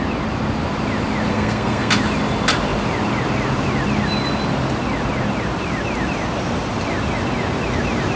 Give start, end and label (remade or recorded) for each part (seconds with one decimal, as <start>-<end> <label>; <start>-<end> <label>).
0.0-1.3 recorded; 1.3-1.9 remade; 1.9-8.2 recorded

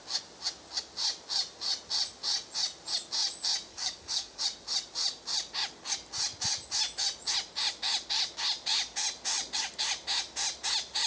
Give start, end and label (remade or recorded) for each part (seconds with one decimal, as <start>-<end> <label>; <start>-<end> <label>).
0.0-3.7 recorded; 3.7-4.4 remade; 4.4-11.1 recorded